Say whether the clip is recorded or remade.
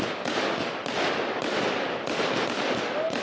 recorded